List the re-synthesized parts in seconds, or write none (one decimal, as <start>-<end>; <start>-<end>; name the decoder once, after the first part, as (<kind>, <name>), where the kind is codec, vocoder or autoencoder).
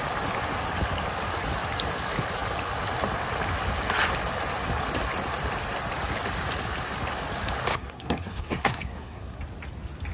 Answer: 7.7-9.4 (codec, SNAC)